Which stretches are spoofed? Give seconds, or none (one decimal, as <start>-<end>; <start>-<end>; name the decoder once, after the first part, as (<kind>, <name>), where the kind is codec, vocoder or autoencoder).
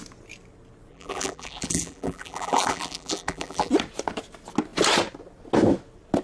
0.9-3.7 (vocoder, BigVGAN v2)